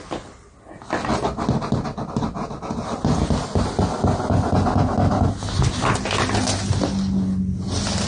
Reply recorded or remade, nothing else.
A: recorded